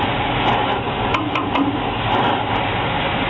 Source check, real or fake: real